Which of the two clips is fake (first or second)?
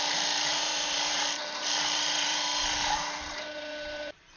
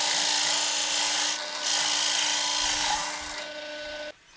first